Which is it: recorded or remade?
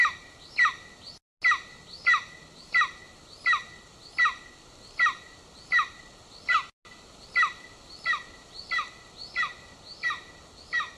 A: recorded